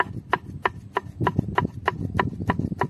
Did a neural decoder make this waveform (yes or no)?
no